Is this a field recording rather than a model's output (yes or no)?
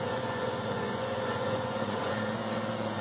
no